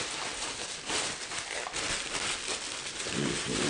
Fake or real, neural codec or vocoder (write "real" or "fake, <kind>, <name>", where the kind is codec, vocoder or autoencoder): real